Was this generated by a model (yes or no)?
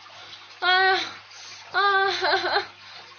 no